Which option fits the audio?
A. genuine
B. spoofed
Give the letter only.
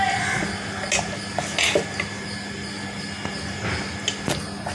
A